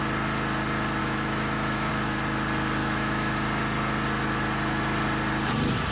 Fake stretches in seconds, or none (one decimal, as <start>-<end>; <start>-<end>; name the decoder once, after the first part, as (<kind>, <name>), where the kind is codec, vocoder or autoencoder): 1.0-1.9 (autoencoder, DAC-VAE); 2.8-3.3